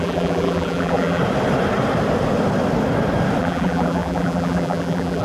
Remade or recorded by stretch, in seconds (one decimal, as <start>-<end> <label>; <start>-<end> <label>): 0.0-1.2 remade; 1.2-3.4 recorded; 3.4-5.2 remade